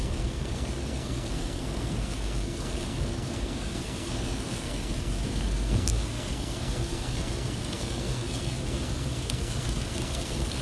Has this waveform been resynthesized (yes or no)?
yes